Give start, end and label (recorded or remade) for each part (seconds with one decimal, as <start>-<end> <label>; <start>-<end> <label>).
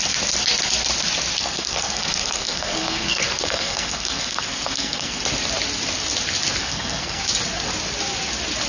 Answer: 0.0-1.4 recorded; 1.4-5.2 remade; 5.2-6.6 recorded; 6.6-7.2 remade; 7.2-8.7 recorded